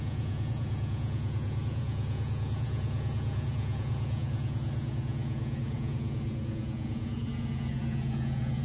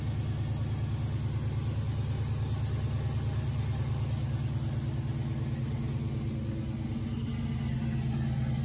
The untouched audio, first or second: second